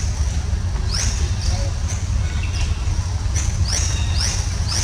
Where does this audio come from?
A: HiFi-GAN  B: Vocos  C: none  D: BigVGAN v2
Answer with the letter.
C